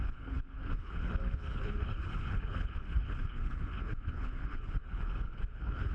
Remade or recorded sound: remade